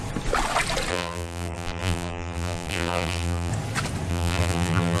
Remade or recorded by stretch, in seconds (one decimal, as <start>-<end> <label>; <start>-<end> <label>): 0.0-0.9 recorded; 0.9-3.5 remade; 3.5-4.1 recorded; 4.1-5.0 remade